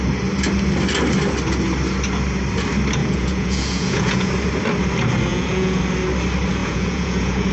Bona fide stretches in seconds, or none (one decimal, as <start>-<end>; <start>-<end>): 0.0-3.0; 4.3-5.3; 5.8-6.6